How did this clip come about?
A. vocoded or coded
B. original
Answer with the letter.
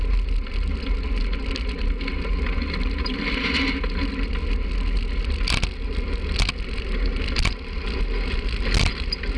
B